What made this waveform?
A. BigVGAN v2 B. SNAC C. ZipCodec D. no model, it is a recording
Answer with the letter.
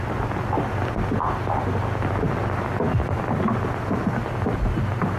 D